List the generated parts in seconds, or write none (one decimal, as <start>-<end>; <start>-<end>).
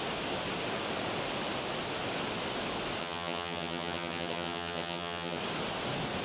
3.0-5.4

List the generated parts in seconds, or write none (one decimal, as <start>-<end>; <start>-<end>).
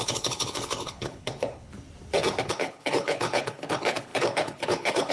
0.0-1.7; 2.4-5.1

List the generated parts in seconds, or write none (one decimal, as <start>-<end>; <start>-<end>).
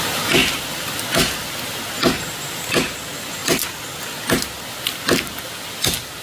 none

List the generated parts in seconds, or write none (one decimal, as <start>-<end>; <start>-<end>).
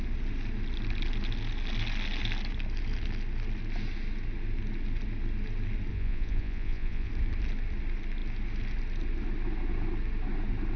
5.9-7.1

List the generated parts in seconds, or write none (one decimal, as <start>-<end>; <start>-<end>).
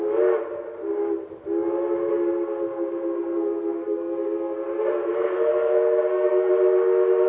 2.1-6.5